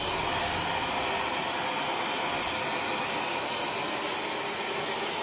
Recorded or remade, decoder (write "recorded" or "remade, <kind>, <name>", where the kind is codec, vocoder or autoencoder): recorded